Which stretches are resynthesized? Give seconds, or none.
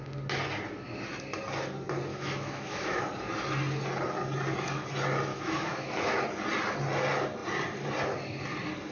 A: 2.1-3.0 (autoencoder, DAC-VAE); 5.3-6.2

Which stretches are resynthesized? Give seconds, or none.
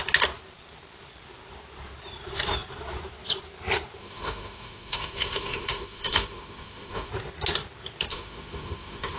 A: 4.0-7.1 (autoencoder, DAC-VAE); 8.1-9.2